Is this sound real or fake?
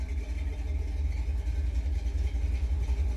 real